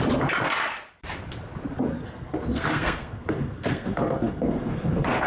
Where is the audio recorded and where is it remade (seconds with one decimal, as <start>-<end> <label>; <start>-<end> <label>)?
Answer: 0.0-1.9 recorded; 1.9-5.3 remade